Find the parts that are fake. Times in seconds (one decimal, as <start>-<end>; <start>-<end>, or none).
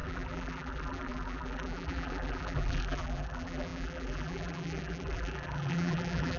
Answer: 0.0-6.4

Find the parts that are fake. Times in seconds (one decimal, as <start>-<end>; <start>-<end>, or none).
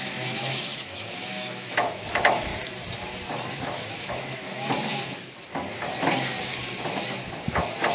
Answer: 0.0-2.5; 3.5-4.9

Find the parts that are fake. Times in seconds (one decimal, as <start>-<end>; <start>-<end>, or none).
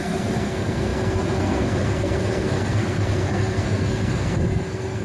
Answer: 0.0-5.0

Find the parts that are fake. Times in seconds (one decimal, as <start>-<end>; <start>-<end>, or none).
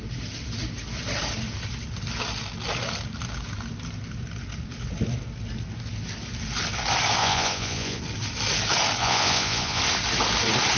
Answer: 7.2-8.0; 9.0-9.8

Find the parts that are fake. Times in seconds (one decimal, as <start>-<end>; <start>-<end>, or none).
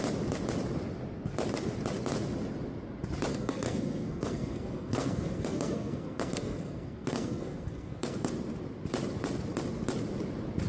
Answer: 3.3-8.3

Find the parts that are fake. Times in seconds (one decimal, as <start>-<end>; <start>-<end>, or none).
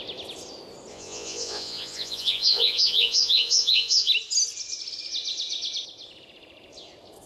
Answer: 0.9-4.1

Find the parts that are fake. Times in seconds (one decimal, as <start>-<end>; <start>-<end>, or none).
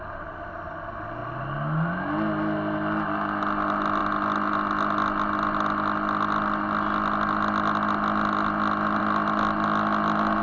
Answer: none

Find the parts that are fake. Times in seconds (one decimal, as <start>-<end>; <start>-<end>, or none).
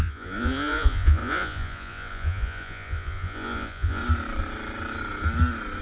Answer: 0.0-4.0